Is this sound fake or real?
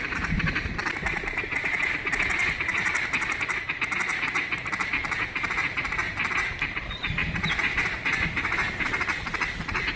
fake